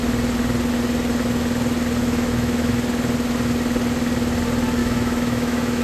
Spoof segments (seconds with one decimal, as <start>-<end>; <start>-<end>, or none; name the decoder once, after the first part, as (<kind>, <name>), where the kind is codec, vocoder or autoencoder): 2.0-2.7 (autoencoder, DAC-VAE); 4.8-5.8